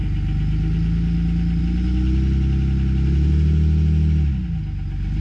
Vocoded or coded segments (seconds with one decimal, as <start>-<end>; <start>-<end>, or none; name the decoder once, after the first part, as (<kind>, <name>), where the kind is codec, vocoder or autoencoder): none